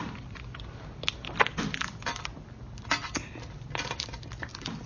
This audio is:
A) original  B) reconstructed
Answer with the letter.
A